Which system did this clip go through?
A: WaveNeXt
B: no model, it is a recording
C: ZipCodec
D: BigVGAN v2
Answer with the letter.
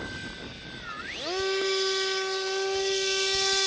B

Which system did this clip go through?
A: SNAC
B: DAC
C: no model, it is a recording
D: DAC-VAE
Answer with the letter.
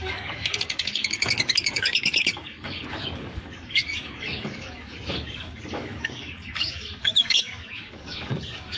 B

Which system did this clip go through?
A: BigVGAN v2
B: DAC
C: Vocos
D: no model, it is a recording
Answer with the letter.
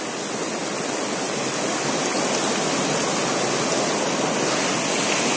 D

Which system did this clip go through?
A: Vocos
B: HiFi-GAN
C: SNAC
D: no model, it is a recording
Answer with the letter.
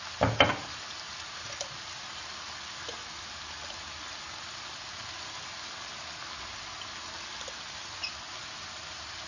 D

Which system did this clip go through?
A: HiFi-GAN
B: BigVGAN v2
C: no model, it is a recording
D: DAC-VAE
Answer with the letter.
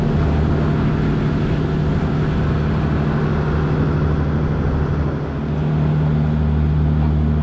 C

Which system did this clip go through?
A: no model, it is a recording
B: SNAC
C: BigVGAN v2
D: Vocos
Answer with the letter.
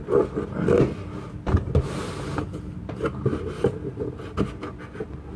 A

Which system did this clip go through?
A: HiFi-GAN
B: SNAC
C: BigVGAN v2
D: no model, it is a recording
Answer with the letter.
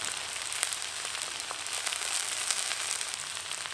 C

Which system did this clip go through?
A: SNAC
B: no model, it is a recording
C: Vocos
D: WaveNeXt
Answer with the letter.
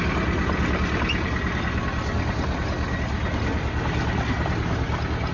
B